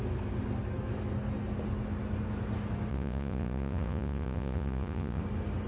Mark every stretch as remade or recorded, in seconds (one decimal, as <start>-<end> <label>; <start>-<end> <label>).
0.0-2.9 recorded; 2.9-5.2 remade; 5.2-5.7 recorded